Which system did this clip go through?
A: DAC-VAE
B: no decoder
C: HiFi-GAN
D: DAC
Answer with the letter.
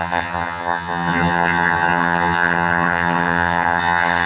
C